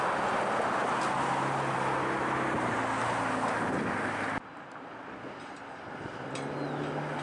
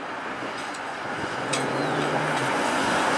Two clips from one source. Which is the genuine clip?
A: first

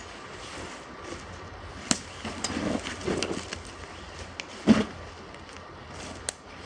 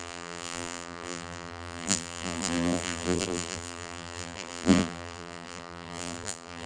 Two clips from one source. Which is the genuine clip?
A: first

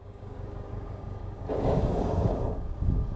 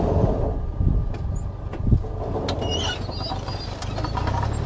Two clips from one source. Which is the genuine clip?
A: second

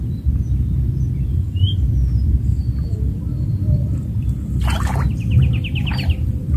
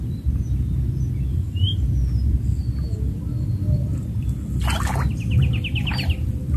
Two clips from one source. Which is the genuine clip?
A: second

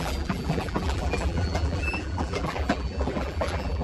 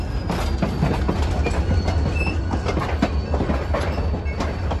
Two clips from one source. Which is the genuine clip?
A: second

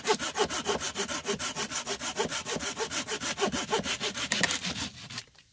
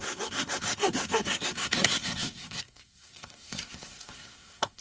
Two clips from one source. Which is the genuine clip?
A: first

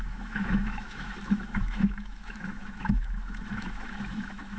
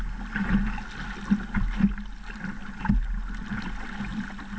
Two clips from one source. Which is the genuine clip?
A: second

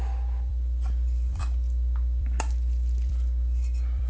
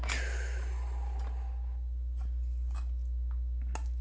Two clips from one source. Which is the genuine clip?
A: second